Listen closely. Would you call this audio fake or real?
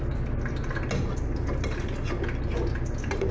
real